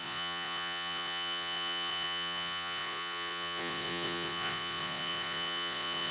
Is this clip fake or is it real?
fake